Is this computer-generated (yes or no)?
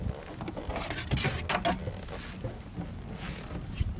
no